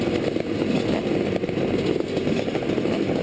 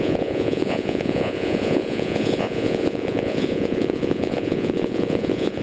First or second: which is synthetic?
second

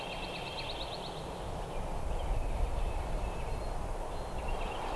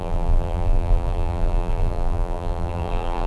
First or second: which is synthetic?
second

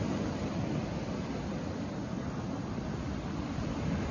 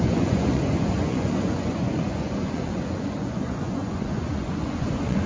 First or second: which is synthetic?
second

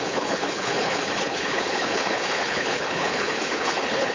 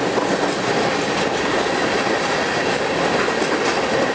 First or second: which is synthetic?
first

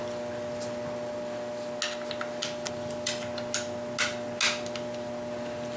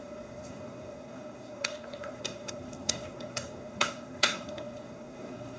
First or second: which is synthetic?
second